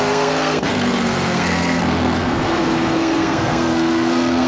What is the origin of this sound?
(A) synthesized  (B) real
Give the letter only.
A